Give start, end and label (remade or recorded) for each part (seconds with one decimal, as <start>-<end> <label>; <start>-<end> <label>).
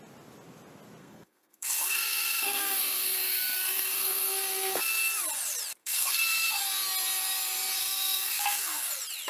0.0-1.0 recorded; 1.0-4.8 remade; 4.8-5.8 recorded; 5.8-6.6 remade; 6.6-7.8 recorded; 7.8-8.9 remade; 8.9-9.3 recorded